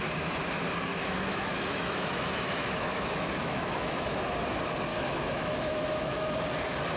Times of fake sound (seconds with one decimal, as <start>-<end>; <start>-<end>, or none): 0.9-4.2; 4.9-6.4